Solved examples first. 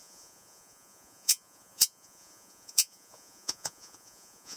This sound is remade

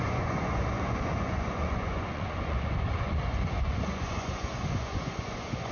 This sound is remade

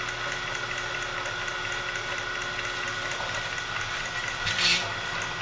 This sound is recorded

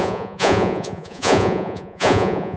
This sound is remade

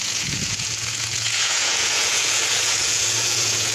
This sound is remade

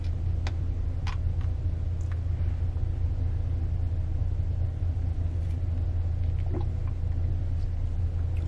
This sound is recorded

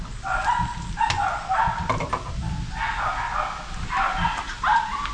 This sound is recorded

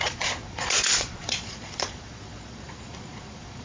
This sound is remade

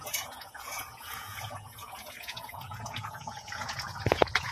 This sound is remade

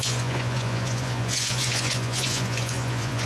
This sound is remade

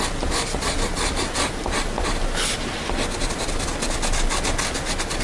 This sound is recorded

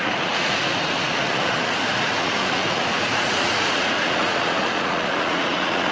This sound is remade